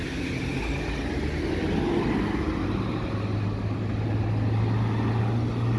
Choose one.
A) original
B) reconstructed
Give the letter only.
A